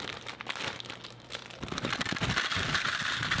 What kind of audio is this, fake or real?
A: real